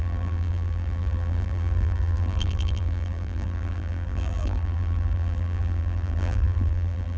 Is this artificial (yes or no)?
yes